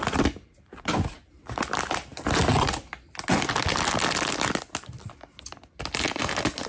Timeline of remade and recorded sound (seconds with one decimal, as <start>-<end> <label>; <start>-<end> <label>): 0.0-6.7 recorded